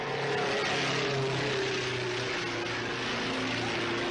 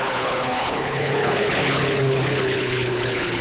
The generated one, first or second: second